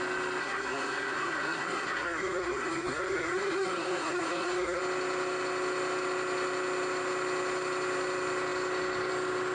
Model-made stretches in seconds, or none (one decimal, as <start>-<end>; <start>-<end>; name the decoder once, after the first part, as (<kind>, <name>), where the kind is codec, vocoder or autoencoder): 0.4-4.8 (codec, SNAC)